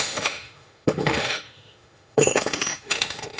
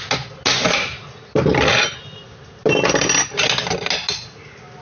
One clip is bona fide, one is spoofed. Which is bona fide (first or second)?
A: second